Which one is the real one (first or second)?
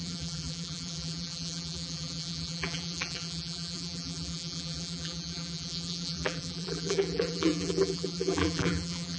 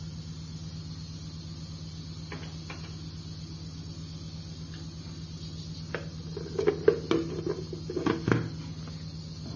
second